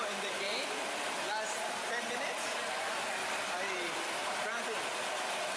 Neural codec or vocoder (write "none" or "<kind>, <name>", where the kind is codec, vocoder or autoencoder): none